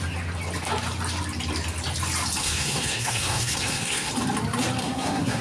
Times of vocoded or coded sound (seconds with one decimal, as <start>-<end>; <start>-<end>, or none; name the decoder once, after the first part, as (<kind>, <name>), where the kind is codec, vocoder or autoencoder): 2.4-4.1 (codec, SNAC); 4.8-5.4